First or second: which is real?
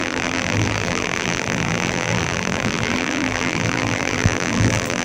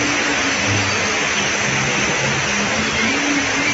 second